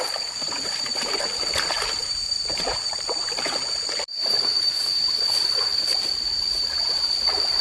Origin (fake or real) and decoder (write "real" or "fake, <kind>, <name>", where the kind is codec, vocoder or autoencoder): fake, vocoder, BigVGAN v2